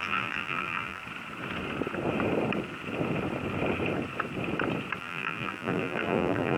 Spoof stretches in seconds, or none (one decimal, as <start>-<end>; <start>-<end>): 0.0-1.0; 5.0-6.6